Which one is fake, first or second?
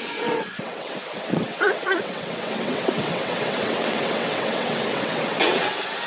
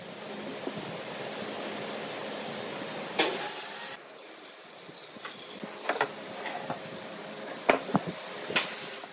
first